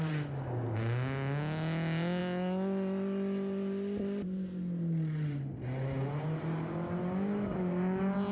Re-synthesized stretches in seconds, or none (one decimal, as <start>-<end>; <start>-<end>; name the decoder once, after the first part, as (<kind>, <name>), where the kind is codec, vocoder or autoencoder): none